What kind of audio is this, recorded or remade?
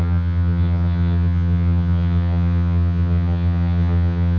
remade